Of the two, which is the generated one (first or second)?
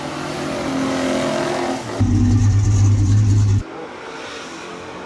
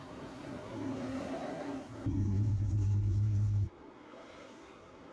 second